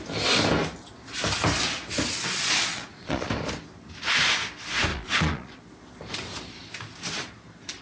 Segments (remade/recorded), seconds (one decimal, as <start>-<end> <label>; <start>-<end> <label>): 0.0-2.3 recorded; 2.3-3.3 remade; 3.3-4.9 recorded; 4.9-5.6 remade; 5.6-7.8 recorded